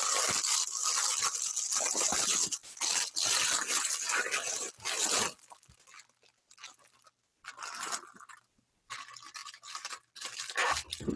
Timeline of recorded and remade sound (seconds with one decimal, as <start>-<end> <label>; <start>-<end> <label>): 0.0-2.6 recorded; 2.6-3.4 remade; 3.4-9.4 recorded; 9.4-9.9 remade; 9.9-11.2 recorded